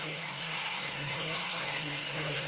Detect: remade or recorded remade